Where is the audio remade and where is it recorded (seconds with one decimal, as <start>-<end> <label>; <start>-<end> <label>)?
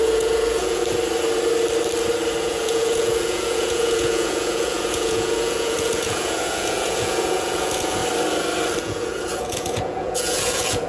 0.0-0.8 remade; 0.8-2.4 recorded; 2.4-8.0 remade; 8.0-8.8 recorded; 8.8-10.9 remade